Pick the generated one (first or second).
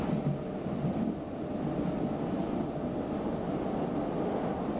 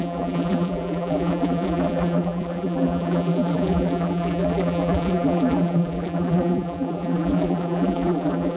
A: second